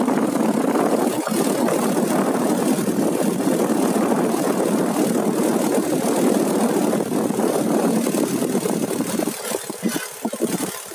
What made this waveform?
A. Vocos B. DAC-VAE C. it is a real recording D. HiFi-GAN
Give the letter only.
C